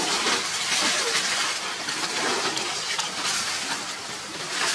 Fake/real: real